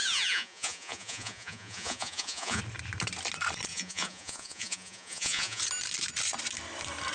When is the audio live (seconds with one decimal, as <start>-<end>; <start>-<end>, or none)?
2.6-3.7; 5.6-7.1